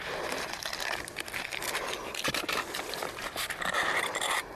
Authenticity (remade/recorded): recorded